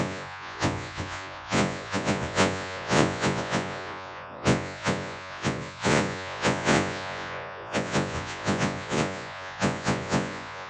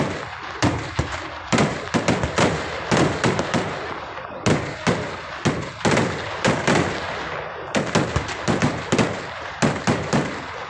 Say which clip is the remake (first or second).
first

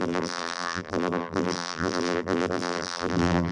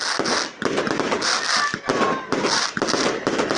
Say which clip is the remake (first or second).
first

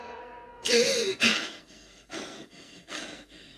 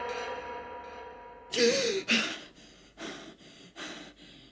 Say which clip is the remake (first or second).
first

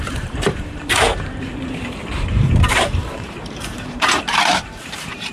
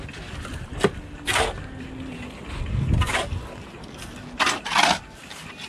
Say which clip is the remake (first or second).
first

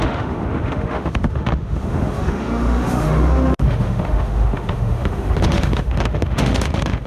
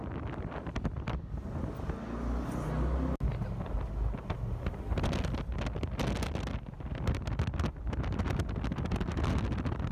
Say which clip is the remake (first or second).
first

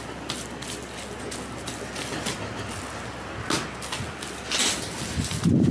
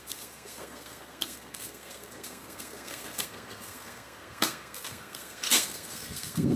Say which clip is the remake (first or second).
second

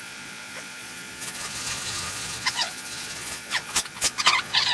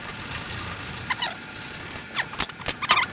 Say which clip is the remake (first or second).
first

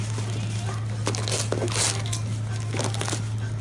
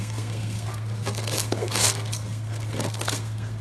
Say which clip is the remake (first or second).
second